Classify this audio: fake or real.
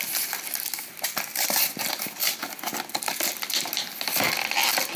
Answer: real